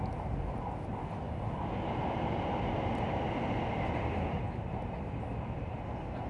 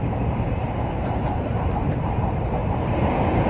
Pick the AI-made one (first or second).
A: second